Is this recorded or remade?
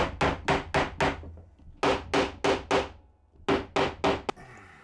recorded